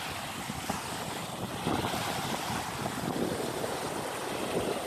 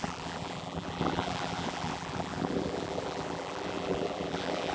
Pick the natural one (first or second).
first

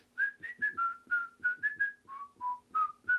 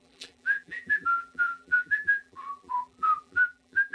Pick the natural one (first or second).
first